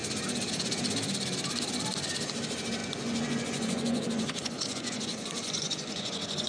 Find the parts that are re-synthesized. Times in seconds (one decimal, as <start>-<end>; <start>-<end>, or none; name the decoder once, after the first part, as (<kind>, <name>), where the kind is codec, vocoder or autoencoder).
2.8-6.5 (vocoder, Vocos)